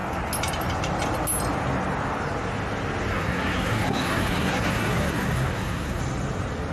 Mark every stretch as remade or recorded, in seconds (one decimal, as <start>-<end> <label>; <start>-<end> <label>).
0.0-3.1 recorded; 3.1-6.0 remade; 6.0-6.7 recorded